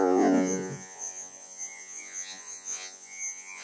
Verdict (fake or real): fake